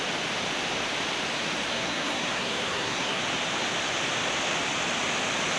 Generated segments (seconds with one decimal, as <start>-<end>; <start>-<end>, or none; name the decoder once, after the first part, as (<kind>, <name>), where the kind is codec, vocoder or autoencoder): 1.7-3.2 (codec, SNAC)